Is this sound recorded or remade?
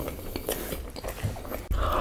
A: recorded